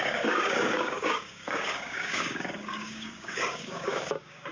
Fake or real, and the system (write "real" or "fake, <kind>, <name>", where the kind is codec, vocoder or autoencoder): fake, codec, DAC